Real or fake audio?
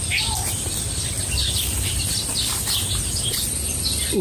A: real